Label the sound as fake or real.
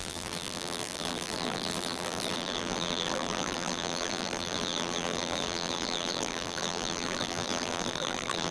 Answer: fake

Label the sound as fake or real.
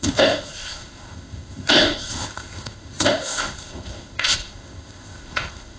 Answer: fake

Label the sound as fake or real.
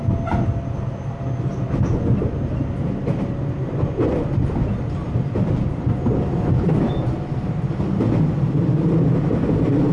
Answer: real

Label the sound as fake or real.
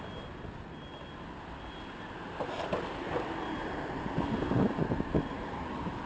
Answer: real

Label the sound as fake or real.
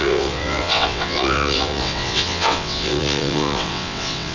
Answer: fake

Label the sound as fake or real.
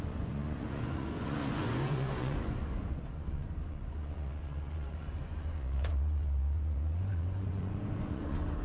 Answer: fake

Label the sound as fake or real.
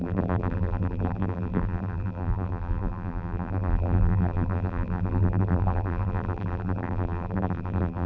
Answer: fake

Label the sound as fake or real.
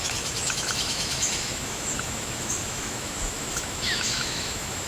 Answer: fake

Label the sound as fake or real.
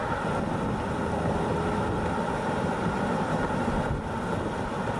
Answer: real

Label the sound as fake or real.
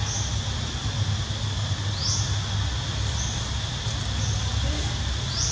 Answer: real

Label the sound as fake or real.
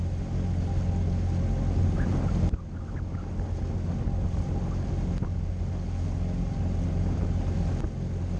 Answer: real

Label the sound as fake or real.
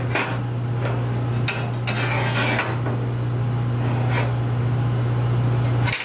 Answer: real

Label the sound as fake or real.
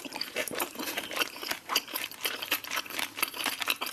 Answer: fake